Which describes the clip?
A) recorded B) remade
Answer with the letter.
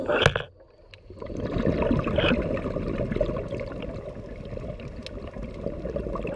A